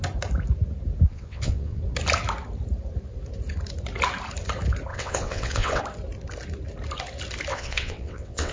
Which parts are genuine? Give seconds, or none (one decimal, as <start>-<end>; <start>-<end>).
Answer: 0.0-1.1; 1.8-4.9; 5.8-7.5